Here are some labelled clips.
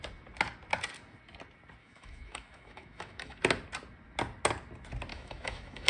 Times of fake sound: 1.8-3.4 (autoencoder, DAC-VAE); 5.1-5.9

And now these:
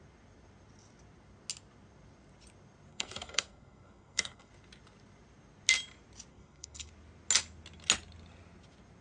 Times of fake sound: 2.9-4.5 (codec, SNAC); 6.3-6.9

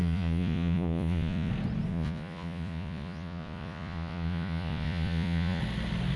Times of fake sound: 0.0-1.5 (vocoder, Vocos); 1.9-5.6

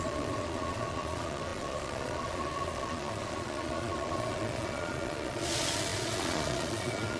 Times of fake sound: 0.0-7.2 (vocoder, Vocos)

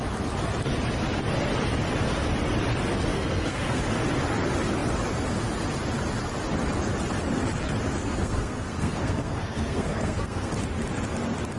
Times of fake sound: 3.1-3.8 (codec, SNAC); 8.0-10.5

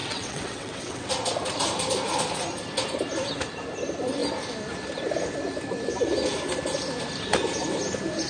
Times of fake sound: 0.0-1.1 (vocoder, WaveNeXt)